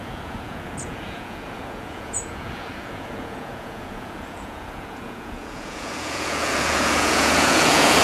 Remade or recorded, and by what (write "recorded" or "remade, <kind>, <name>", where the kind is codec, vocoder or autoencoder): remade, vocoder, Vocos